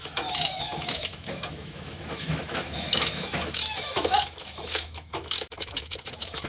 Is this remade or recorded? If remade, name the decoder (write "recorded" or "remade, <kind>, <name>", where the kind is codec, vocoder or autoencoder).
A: remade, autoencoder, DAC-VAE